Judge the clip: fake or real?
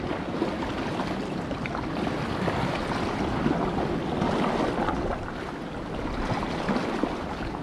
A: real